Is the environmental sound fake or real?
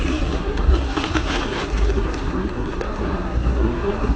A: fake